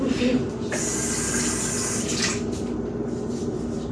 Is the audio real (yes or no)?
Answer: yes